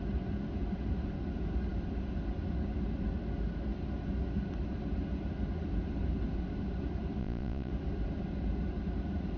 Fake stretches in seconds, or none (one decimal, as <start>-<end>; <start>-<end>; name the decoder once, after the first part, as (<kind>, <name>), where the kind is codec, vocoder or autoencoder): 7.2-7.7 (vocoder, Vocos)